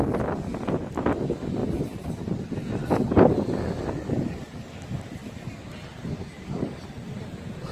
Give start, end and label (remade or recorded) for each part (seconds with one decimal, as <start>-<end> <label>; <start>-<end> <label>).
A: 0.0-7.7 recorded